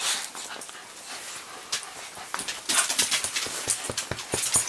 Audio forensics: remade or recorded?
recorded